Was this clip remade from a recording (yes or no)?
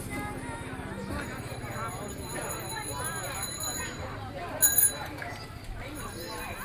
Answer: no